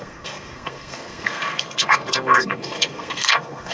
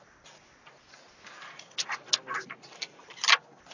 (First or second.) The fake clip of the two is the first